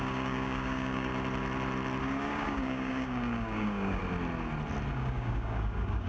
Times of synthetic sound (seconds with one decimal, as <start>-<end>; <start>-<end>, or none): 0.0-1.1; 2.0-4.0; 4.9-6.1